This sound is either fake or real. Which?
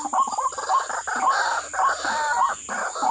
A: real